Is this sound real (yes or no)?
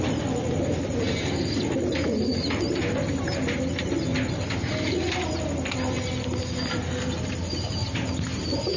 yes